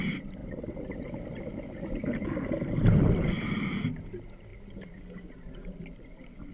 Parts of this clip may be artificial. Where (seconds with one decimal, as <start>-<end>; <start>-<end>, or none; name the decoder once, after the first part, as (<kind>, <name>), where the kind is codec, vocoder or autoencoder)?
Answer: none